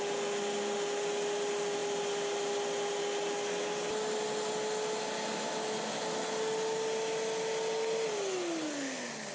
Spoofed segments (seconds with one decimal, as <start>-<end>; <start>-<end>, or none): none